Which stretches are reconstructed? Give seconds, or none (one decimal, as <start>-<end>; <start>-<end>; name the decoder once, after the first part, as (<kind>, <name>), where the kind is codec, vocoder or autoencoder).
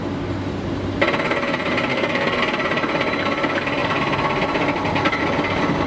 1.9-2.4 (codec, SNAC)